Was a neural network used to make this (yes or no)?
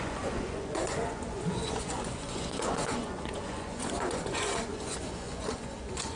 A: yes